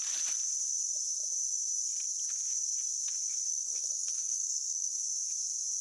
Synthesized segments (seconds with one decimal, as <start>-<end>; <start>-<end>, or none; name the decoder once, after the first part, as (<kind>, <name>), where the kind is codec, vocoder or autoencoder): 3.5-5.0 (codec, SNAC)